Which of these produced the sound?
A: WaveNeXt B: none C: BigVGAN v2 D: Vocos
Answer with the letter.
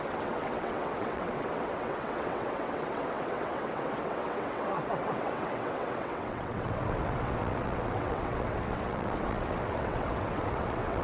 A